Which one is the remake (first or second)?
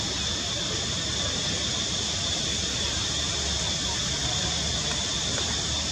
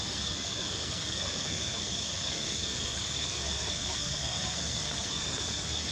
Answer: second